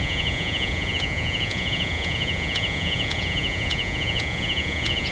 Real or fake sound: fake